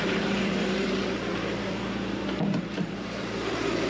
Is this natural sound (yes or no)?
no